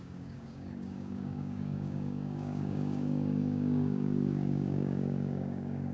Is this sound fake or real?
fake